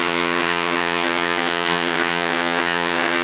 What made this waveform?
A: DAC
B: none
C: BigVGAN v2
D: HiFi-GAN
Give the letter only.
D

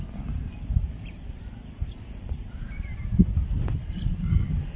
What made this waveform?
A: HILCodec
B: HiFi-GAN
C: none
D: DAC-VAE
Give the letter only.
C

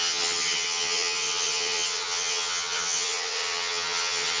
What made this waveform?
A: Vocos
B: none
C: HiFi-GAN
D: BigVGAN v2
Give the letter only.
C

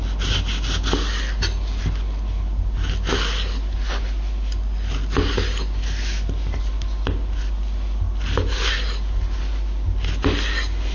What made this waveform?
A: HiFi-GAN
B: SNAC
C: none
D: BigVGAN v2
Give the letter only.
C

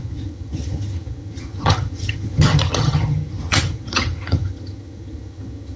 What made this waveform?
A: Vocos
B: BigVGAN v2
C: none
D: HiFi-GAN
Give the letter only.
D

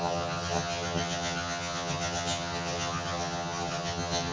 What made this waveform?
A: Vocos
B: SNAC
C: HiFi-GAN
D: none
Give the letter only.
C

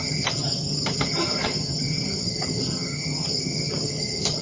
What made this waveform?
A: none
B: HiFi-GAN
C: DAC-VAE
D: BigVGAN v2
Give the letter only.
B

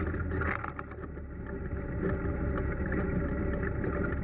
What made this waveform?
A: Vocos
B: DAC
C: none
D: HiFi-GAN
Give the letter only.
C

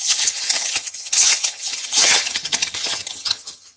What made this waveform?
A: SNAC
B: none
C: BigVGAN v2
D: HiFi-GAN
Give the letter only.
D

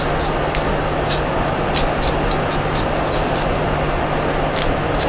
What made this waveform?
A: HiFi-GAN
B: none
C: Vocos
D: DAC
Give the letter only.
B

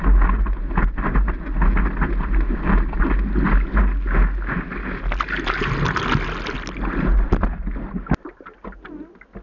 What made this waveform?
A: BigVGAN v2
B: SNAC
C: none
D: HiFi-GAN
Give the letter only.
C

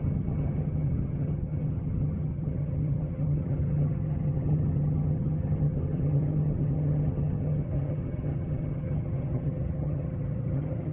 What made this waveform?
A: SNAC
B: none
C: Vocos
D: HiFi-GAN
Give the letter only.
D